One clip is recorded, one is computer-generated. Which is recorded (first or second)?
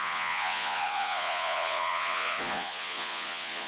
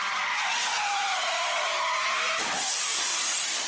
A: second